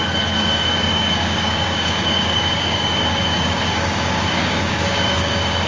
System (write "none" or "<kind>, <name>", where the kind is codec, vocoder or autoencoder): codec, DAC